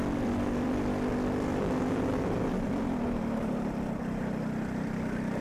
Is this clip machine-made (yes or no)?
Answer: yes